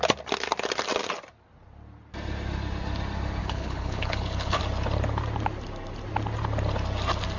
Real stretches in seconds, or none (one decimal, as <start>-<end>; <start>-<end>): 0.0-3.4; 4.6-7.4